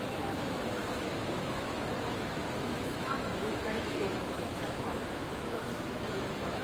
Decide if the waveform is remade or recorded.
remade